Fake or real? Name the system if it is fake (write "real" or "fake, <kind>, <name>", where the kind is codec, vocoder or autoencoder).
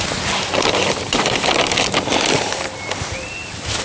real